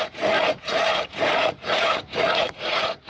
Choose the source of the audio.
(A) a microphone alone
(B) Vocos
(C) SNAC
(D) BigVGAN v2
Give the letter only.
B